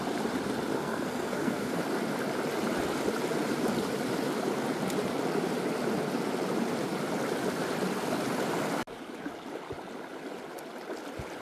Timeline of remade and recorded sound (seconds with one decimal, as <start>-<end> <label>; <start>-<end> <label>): 0.0-0.7 recorded; 0.7-1.8 remade; 1.8-11.4 recorded